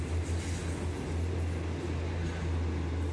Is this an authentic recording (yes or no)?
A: yes